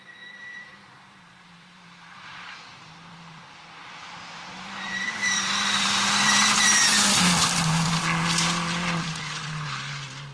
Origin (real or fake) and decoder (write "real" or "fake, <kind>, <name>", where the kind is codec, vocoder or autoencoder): fake, vocoder, BigVGAN v2